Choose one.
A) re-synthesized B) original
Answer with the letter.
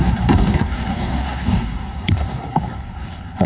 A